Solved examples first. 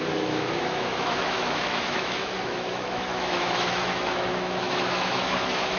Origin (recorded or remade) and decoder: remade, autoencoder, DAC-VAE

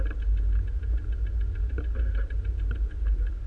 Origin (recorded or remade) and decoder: recorded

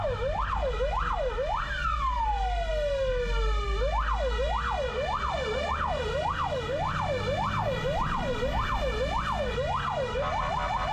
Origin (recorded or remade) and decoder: recorded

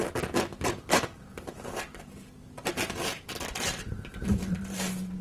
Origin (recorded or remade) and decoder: recorded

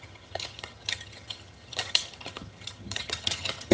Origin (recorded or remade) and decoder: remade, vocoder, HiFi-GAN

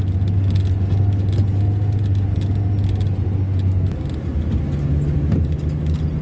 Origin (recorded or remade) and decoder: recorded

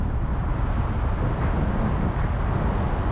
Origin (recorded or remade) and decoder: recorded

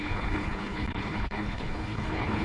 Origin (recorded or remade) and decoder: remade, codec, HILCodec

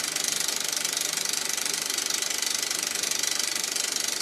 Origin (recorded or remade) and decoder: recorded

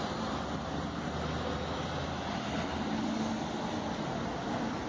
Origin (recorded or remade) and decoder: recorded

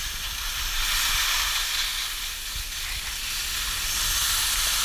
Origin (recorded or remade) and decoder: recorded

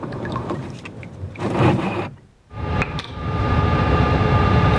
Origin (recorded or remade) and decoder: remade, vocoder, BigVGAN v2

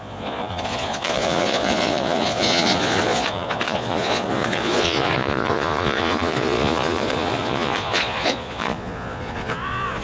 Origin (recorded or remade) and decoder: remade, vocoder, Vocos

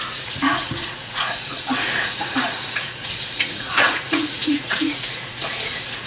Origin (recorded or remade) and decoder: remade, vocoder, Vocos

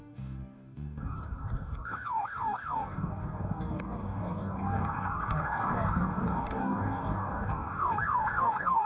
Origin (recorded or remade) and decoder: remade, codec, DAC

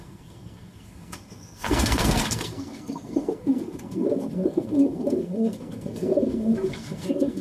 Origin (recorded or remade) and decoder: remade, codec, SNAC